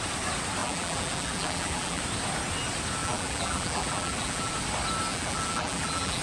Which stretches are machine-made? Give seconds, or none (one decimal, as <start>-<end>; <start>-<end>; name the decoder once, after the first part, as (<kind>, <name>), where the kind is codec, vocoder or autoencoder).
0.6-2.0 (vocoder, BigVGAN v2); 3.0-4.5; 5.1-6.2